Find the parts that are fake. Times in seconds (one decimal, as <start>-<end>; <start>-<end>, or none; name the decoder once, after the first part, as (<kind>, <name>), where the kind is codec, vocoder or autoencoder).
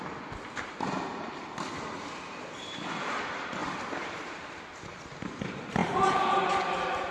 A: 3.6-4.8 (vocoder, BigVGAN v2); 5.8-6.3